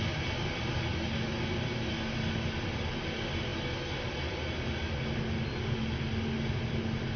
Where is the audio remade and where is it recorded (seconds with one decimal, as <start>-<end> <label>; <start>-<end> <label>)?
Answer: 0.0-7.2 recorded